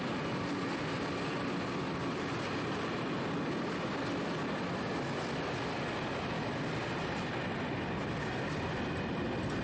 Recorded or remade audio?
recorded